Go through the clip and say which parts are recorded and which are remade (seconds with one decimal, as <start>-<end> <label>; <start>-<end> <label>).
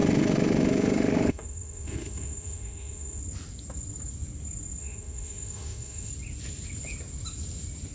0.0-3.2 remade; 3.2-4.8 recorded; 4.8-6.1 remade; 6.1-7.9 recorded